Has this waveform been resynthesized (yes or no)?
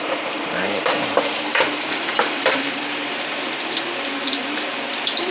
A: yes